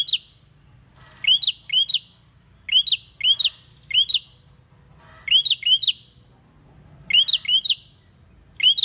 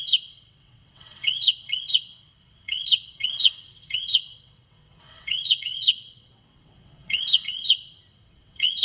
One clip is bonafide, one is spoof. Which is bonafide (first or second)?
first